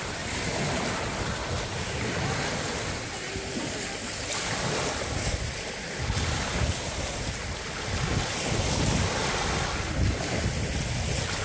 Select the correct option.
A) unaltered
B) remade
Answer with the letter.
A